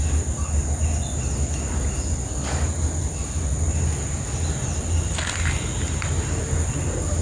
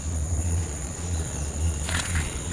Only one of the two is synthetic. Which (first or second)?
second